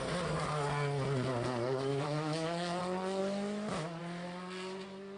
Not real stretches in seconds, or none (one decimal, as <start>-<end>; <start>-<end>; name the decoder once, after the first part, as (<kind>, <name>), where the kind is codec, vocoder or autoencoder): 1.9-2.8 (autoencoder, DAC-VAE)